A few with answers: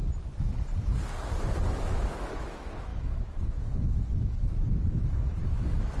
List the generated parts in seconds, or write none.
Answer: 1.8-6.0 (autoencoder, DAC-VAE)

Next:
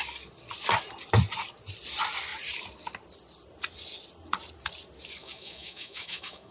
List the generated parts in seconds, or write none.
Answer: 5.2-6.5 (autoencoder, DAC-VAE)

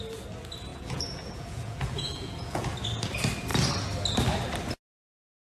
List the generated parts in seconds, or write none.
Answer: 0.7-2.7 (vocoder, Vocos)